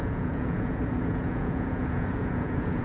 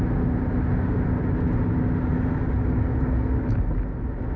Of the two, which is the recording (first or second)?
second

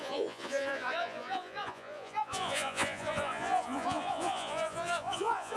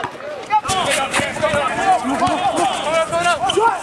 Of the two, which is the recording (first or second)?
second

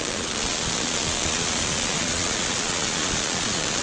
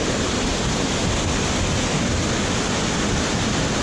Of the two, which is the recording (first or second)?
second